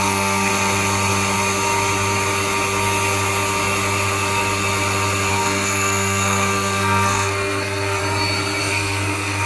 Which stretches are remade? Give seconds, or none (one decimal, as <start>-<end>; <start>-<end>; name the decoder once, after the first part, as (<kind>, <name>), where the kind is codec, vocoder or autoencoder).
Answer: 0.0-0.5 (codec, SNAC); 5.3-8.0; 8.6-9.4